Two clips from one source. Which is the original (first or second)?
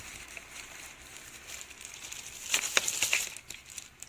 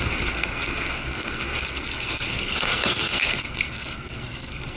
first